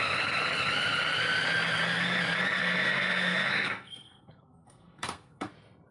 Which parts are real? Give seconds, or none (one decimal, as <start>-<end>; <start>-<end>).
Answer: 0.0-2.6; 5.5-5.9